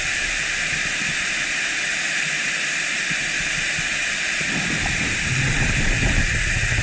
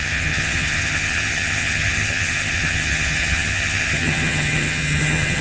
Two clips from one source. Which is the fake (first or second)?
second